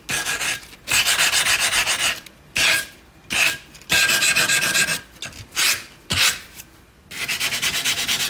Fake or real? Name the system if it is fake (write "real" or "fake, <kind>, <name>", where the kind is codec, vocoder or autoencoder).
real